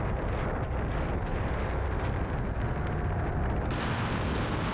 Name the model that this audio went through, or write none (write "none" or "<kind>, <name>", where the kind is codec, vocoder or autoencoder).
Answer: none